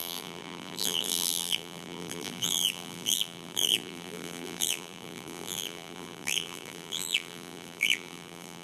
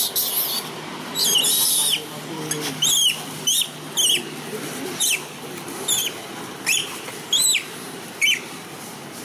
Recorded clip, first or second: second